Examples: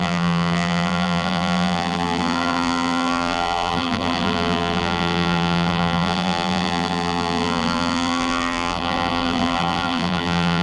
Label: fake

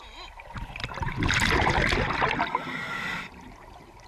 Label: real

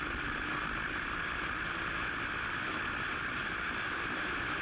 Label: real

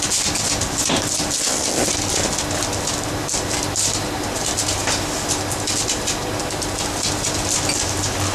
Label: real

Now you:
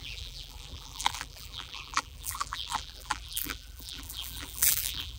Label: fake